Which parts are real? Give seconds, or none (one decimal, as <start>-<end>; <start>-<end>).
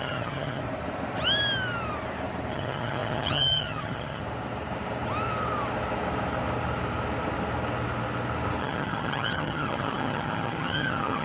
0.6-2.5; 4.2-8.6